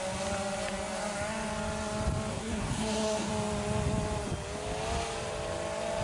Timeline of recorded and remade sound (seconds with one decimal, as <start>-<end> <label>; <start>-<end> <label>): 0.0-2.3 recorded; 2.3-3.3 remade; 3.3-6.0 recorded